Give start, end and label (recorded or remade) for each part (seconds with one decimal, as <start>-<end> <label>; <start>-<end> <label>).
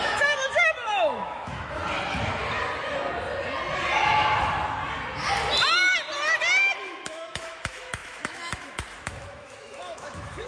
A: 0.0-1.8 remade; 1.8-6.8 recorded; 6.8-10.5 remade